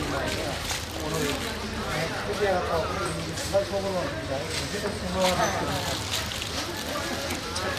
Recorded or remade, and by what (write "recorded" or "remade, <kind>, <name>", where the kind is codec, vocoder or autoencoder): recorded